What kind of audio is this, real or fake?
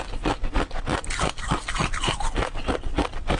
real